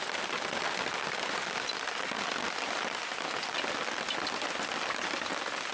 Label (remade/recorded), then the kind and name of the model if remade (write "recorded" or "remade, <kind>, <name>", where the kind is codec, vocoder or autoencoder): recorded